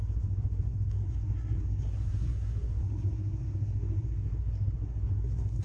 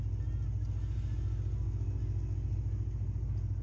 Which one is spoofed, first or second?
first